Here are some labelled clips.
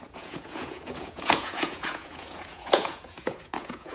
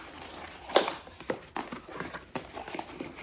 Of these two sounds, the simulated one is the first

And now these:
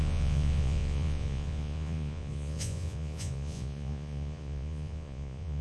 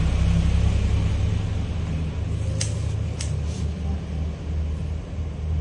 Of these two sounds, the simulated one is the first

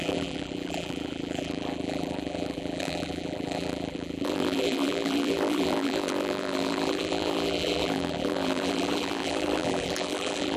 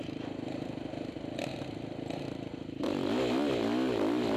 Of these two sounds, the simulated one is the first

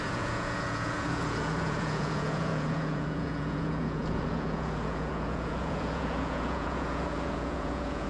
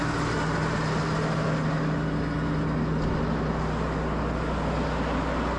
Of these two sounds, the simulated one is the first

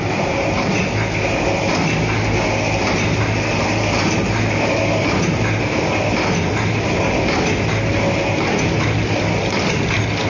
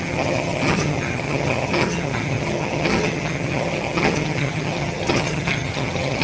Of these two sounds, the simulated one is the second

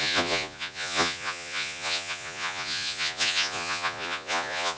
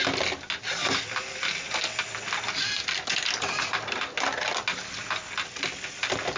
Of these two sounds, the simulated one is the first